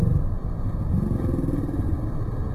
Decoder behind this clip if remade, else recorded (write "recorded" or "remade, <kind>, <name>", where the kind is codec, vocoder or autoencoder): recorded